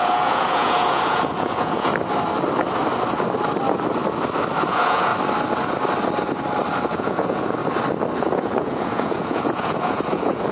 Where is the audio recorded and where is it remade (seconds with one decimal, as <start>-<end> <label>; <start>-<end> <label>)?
0.0-1.9 remade; 1.9-4.6 recorded; 4.6-5.1 remade; 5.1-6.8 recorded; 6.8-7.6 remade; 7.6-8.2 recorded; 8.2-10.5 remade